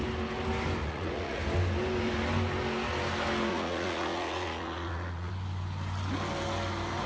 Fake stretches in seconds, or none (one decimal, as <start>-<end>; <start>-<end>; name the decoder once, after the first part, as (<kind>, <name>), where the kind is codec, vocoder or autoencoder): 0.8-1.4 (vocoder, Vocos); 3.5-5.3